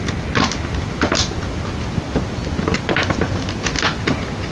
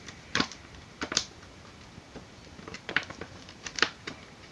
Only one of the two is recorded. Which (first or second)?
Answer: first